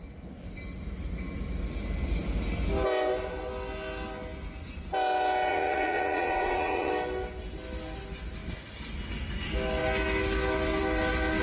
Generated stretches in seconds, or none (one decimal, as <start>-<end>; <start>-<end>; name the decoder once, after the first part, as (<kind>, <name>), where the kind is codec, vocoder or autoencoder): 5.5-6.9 (vocoder, Vocos)

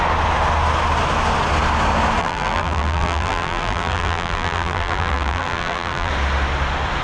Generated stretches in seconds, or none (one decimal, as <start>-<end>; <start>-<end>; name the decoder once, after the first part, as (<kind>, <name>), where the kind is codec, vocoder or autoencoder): 2.2-6.1 (vocoder, BigVGAN v2)